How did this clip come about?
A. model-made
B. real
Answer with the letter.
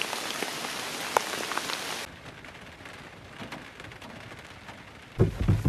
B